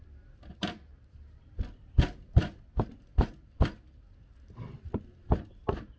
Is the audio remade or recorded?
recorded